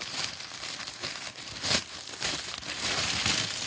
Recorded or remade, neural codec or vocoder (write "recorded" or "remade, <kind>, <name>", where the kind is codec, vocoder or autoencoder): remade, vocoder, BigVGAN v2